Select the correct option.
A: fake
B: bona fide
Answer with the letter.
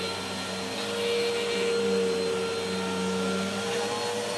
B